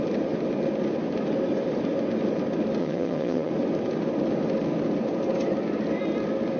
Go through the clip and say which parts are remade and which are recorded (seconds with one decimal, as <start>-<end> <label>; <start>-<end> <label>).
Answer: 0.0-2.8 recorded; 2.8-3.5 remade; 3.5-6.6 recorded